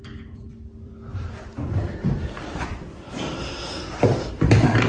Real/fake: fake